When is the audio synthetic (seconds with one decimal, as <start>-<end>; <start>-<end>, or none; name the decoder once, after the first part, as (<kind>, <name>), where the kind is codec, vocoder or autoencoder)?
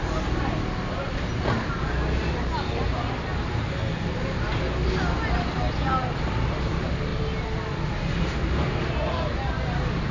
none